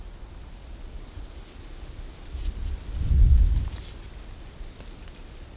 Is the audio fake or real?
real